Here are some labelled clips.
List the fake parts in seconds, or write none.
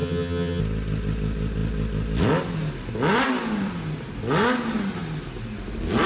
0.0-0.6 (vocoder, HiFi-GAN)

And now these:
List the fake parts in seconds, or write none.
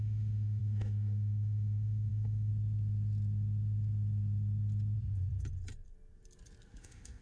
0.0-2.5 (autoencoder, DAC-VAE); 6.8-7.2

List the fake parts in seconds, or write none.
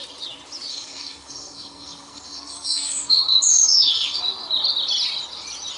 0.7-4.2 (codec, SNAC)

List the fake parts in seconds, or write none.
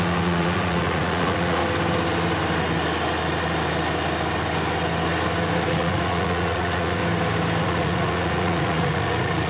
0.0-1.6 (vocoder, Vocos); 5.7-7.0; 7.6-9.5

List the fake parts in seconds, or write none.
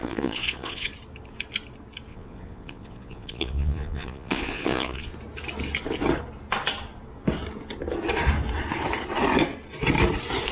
0.0-0.9 (vocoder, Vocos); 2.1-5.1